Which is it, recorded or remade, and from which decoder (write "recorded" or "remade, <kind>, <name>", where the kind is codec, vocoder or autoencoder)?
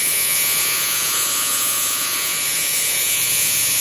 remade, vocoder, Vocos